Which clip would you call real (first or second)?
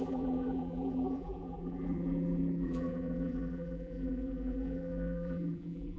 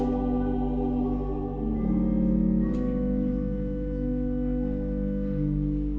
second